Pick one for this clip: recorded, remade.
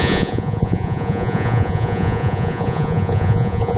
remade